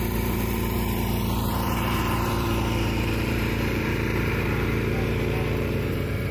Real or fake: fake